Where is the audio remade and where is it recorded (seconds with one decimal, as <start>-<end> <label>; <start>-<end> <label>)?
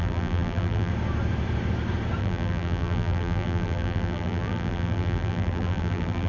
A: 0.0-0.9 remade; 0.9-2.2 recorded; 2.2-6.3 remade